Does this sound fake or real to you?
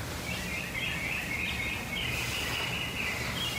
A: real